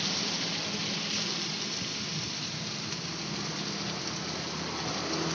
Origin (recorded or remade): recorded